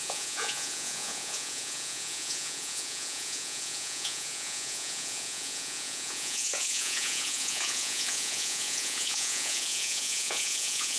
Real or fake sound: fake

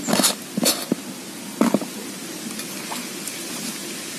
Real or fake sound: real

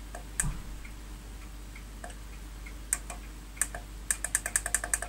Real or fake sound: real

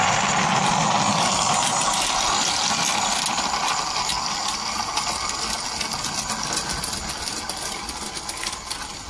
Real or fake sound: real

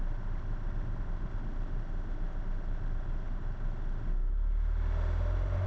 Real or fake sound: real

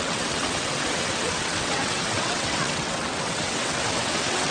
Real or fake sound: fake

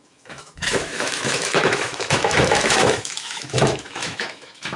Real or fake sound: fake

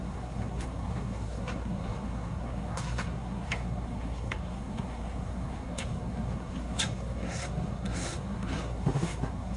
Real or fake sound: fake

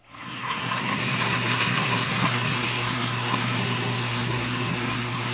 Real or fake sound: fake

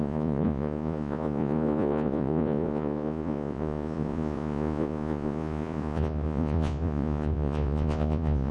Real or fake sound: fake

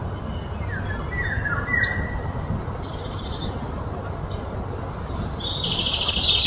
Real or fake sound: real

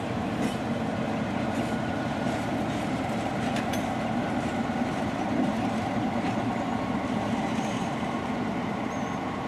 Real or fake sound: fake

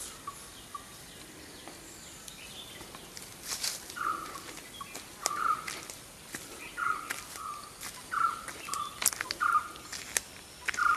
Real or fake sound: real